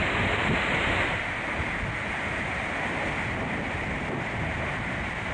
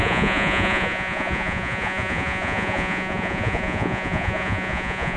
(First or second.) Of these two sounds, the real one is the first